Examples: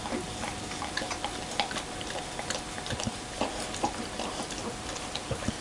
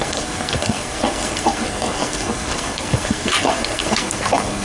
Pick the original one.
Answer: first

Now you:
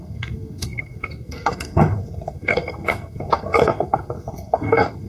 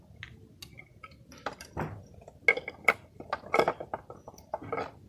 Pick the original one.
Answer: second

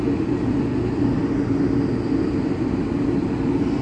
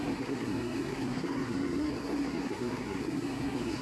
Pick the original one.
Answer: first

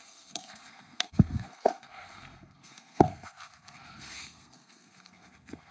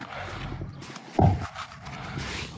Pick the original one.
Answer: second